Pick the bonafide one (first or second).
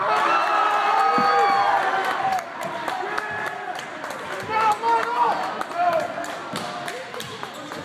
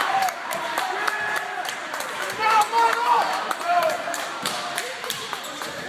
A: first